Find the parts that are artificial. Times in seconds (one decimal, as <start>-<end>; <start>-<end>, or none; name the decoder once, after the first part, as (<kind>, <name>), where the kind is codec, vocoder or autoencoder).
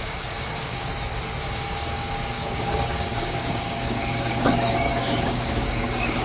0.0-0.9 (codec, DAC); 1.4-6.2